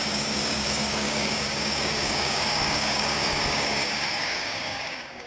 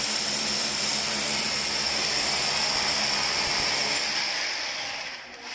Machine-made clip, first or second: first